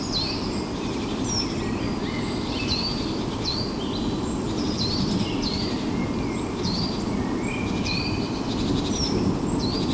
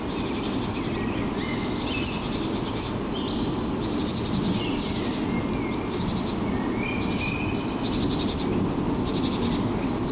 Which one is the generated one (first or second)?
first